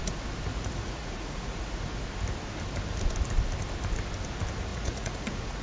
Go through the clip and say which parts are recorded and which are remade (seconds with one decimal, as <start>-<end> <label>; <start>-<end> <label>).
0.0-0.5 recorded; 0.5-1.8 remade; 1.8-4.7 recorded; 4.7-5.6 remade